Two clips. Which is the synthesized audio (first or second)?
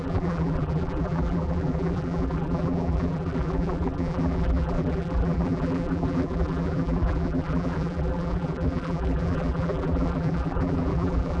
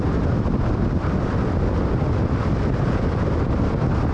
first